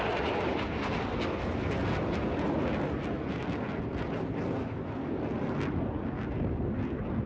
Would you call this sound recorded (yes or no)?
yes